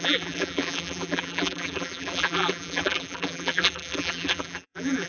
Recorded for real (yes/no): no